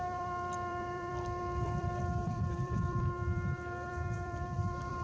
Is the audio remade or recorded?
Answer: remade